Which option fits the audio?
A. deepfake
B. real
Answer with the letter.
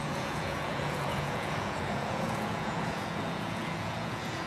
A